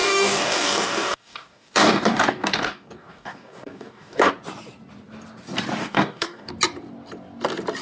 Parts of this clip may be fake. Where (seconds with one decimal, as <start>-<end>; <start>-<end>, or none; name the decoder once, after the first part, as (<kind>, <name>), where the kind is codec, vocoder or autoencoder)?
0.0-4.3 (codec, DAC); 5.8-6.5